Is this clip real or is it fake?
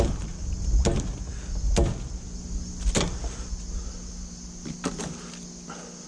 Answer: real